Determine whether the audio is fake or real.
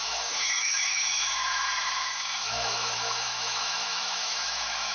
fake